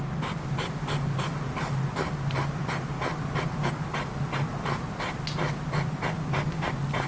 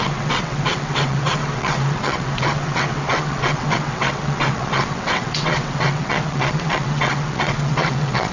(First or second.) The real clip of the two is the first